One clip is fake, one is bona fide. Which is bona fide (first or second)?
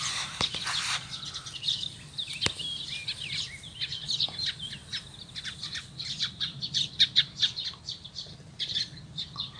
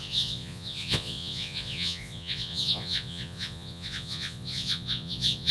first